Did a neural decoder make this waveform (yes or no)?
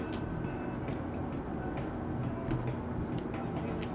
no